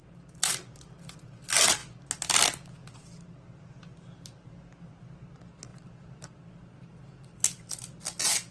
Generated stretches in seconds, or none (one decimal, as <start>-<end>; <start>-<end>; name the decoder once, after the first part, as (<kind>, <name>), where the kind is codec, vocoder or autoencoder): 0.0-1.2 (vocoder, BigVGAN v2); 5.7-7.0